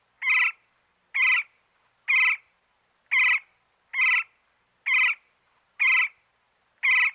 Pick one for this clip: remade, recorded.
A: recorded